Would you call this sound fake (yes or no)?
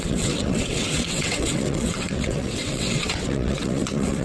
yes